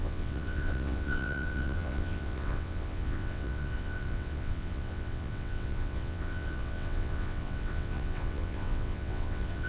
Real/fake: fake